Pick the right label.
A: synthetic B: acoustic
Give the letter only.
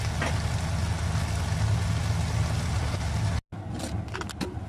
B